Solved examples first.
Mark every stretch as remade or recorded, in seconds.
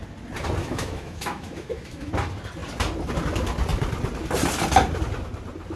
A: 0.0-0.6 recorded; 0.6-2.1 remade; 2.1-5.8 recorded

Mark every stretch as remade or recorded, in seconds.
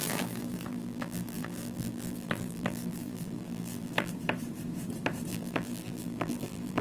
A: 0.0-4.1 remade; 4.1-5.3 recorded; 5.3-6.8 remade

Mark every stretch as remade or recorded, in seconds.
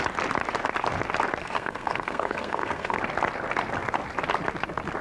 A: 0.0-1.4 recorded; 1.4-3.0 remade; 3.0-5.0 recorded